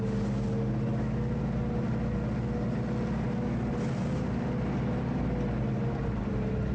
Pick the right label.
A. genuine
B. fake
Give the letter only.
A